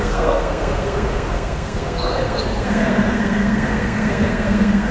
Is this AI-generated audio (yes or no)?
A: yes